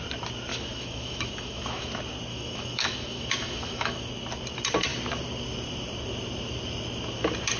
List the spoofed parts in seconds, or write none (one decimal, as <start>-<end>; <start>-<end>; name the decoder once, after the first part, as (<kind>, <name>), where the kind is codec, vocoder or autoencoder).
0.5-1.9 (autoencoder, DAC-VAE); 2.3-4.1